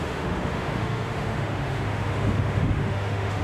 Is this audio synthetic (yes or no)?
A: yes